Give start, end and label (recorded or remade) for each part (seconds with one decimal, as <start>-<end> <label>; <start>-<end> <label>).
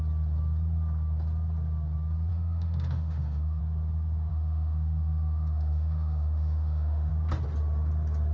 0.0-2.3 recorded; 2.3-3.6 remade; 3.6-4.3 recorded; 4.3-7.1 remade; 7.1-8.3 recorded